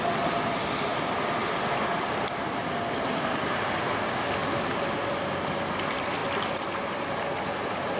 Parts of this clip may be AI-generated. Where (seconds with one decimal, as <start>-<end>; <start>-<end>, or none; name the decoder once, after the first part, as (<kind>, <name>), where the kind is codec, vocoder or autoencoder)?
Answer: 4.4-5.4 (vocoder, BigVGAN v2)